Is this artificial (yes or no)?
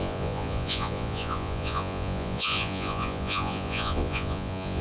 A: yes